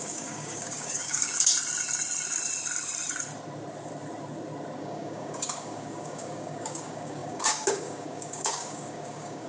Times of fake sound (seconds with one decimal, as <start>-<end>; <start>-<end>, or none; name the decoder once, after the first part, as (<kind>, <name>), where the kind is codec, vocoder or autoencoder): 0.0-1.5 (codec, DAC); 4.8-9.5